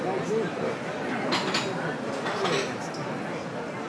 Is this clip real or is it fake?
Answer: real